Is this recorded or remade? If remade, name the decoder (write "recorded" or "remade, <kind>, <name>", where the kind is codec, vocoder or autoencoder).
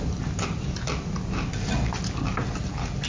recorded